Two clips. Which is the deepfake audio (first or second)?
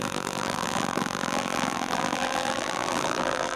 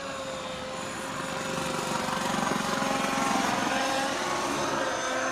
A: first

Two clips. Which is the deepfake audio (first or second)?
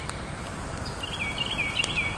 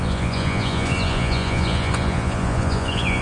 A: second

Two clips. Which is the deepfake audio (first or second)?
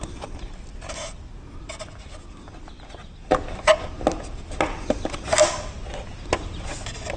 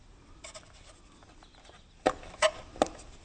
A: second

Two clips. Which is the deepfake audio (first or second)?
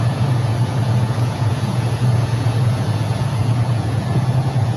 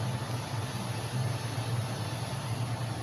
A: first